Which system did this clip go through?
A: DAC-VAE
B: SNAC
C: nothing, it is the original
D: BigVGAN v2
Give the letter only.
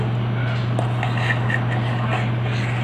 C